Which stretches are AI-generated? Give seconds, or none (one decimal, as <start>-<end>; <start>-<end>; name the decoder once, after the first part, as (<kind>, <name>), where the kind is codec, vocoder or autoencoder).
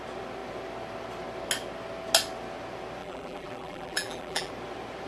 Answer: 3.0-4.5 (vocoder, BigVGAN v2)